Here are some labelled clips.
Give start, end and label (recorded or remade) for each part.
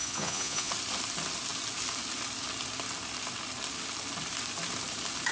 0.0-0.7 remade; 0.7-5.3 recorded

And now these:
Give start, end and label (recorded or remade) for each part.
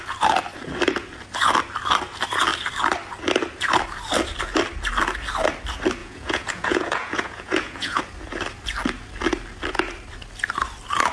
0.0-6.0 recorded; 6.0-8.0 remade; 8.0-11.1 recorded